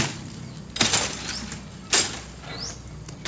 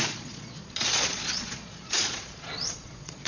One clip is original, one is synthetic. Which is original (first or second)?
first